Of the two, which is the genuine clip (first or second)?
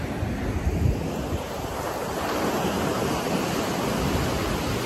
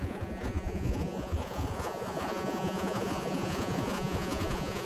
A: first